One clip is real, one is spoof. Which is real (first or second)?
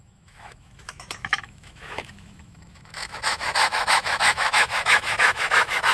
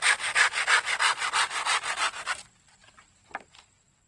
second